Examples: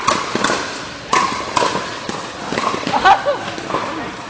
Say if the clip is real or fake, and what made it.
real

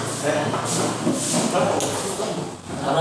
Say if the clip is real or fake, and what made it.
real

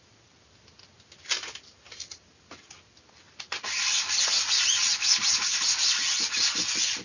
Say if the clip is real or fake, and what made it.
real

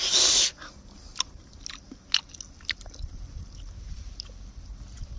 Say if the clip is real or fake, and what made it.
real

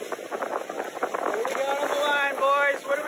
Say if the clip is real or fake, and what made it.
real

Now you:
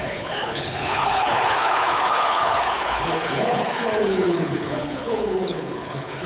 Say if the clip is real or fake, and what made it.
fake, codec, HILCodec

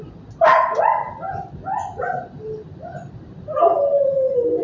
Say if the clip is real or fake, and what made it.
real